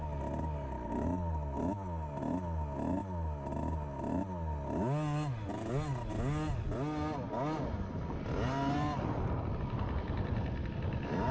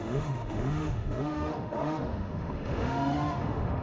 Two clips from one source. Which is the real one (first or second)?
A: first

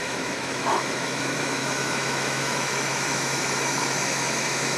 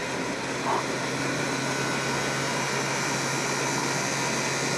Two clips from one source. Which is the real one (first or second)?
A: second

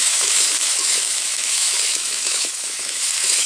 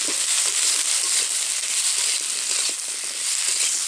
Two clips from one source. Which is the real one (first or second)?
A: second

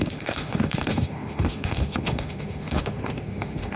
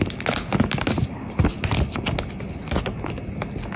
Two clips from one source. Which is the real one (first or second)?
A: second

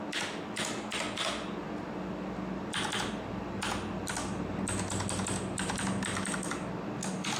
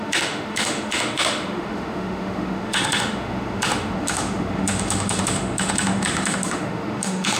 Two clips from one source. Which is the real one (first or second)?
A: first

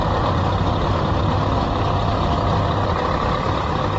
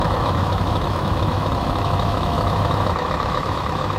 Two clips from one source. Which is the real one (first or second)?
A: first